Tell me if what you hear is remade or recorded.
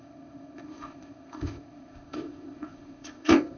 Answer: remade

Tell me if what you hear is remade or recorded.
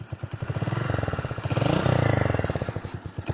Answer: recorded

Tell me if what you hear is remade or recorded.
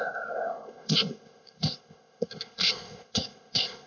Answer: remade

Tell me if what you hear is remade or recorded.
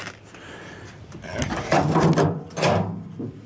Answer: recorded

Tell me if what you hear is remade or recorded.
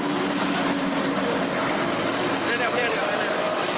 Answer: recorded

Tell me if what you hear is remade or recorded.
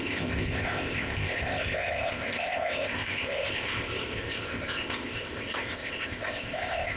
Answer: remade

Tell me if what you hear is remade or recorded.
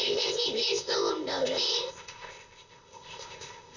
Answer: remade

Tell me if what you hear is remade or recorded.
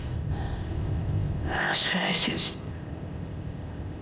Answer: remade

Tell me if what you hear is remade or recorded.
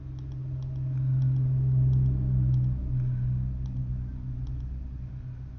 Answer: recorded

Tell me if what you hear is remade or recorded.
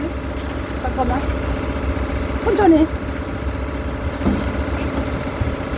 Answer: recorded